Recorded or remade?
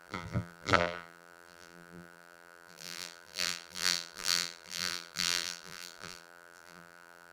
remade